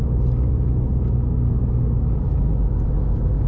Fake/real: real